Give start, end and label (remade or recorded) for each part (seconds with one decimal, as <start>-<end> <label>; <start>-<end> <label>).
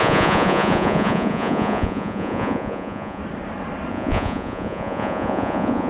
0.0-3.2 remade; 3.2-3.9 recorded; 3.9-5.9 remade